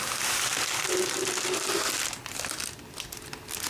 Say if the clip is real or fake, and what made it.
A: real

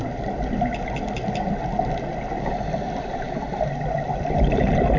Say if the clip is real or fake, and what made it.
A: real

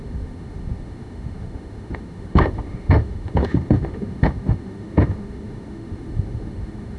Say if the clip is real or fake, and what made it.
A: fake, autoencoder, DAC-VAE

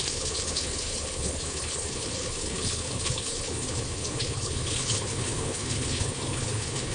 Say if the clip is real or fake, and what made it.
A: fake, codec, HILCodec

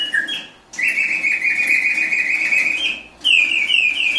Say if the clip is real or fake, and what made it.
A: real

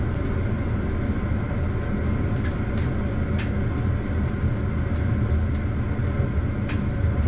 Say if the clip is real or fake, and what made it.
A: real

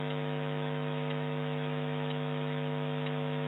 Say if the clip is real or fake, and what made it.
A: fake, autoencoder, DAC-VAE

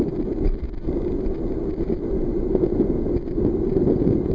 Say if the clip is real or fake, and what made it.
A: real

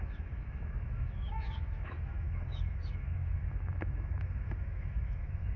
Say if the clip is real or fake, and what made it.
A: fake, autoencoder, DAC-VAE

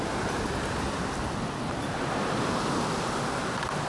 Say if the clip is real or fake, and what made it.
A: real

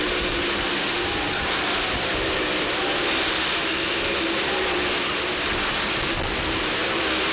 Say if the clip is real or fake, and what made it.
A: real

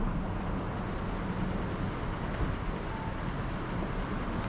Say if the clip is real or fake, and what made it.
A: real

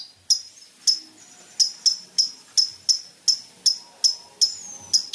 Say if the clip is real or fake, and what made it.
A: real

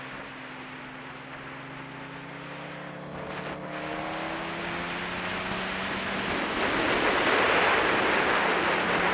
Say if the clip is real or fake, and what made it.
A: real